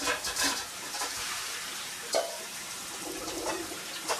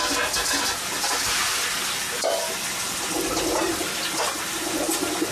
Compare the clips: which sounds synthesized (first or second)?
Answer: first